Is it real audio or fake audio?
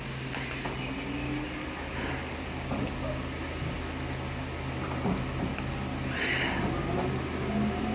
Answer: real